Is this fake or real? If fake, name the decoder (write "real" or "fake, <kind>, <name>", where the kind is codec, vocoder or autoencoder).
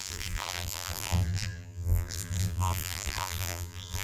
fake, vocoder, BigVGAN v2